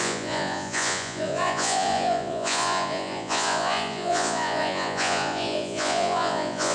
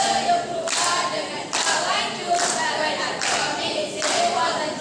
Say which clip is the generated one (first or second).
first